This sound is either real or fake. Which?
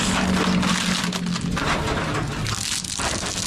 real